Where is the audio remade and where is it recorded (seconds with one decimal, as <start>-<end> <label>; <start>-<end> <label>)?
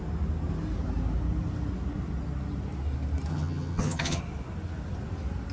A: 0.0-3.3 recorded; 3.3-4.2 remade; 4.2-5.5 recorded